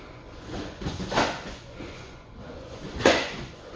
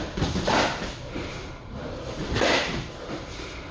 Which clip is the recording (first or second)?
second